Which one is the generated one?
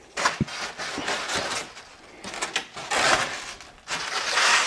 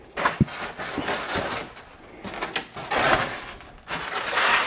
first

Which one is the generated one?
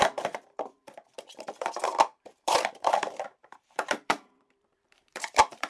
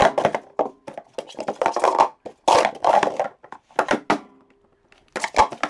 first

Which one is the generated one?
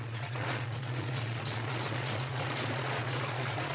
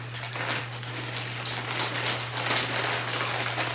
first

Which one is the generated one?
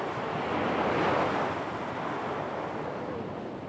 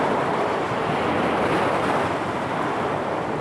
second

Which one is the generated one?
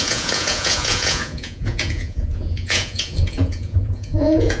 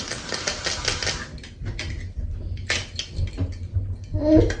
first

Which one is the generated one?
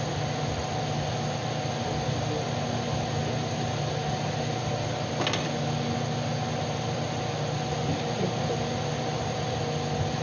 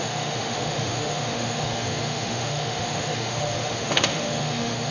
second